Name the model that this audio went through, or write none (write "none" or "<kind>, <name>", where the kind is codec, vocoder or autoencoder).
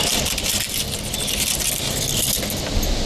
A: none